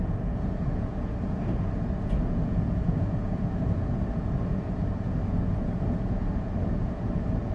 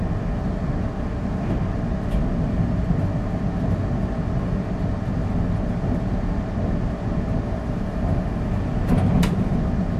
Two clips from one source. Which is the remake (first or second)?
first